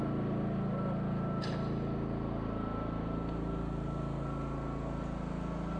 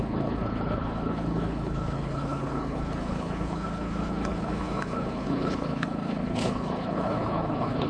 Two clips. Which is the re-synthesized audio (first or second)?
second